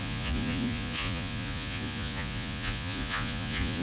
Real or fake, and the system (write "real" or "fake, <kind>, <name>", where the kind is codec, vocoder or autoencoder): fake, vocoder, Vocos